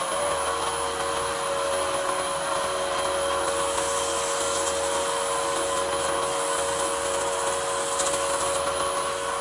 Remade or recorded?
recorded